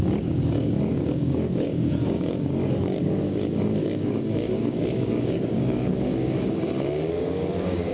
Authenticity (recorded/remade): remade